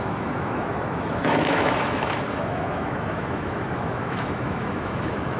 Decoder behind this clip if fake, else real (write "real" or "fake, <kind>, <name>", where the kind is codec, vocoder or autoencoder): fake, autoencoder, DAC-VAE